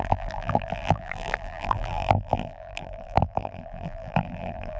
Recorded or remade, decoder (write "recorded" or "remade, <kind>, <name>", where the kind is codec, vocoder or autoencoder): remade, vocoder, BigVGAN v2